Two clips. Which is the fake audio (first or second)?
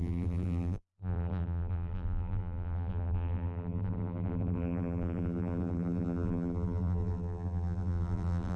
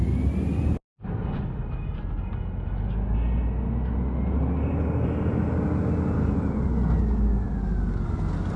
first